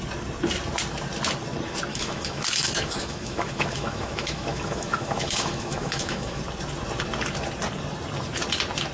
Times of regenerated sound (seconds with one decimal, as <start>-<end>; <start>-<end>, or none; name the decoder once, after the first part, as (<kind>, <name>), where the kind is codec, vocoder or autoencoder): 1.9-6.4 (autoencoder, DAC-VAE)